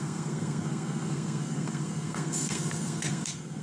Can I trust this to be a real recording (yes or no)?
no